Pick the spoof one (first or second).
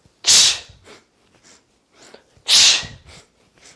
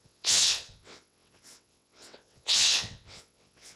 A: second